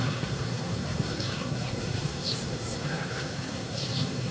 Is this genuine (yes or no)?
no